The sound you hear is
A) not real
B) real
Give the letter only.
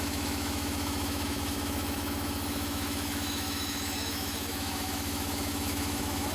A